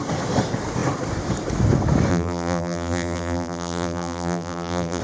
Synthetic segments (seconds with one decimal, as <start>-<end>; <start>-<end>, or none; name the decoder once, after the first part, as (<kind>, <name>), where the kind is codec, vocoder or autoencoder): 2.1-5.0 (vocoder, BigVGAN v2)